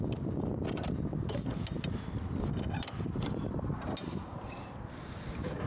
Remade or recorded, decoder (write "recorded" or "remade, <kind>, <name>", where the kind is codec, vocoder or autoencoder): recorded